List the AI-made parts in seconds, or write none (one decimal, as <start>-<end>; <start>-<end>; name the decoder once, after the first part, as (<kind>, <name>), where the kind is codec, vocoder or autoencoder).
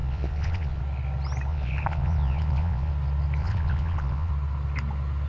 0.0-0.8 (vocoder, Vocos); 1.5-2.9; 3.4-4.3